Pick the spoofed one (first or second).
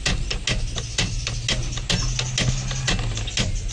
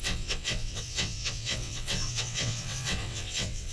second